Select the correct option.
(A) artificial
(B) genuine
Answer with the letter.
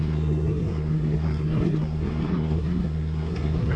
A